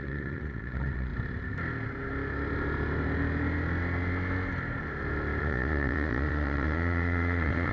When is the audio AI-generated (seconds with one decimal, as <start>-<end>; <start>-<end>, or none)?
0.0-1.1; 5.4-7.7